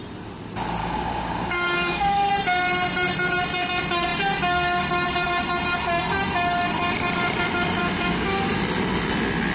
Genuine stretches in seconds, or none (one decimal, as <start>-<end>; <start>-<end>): 0.0-0.8; 2.3-7.8; 8.5-9.5